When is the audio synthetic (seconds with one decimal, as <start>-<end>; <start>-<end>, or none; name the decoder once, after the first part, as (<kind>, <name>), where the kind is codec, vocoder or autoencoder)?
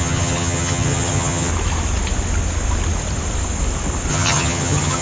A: 0.0-1.5 (vocoder, HiFi-GAN); 4.1-5.0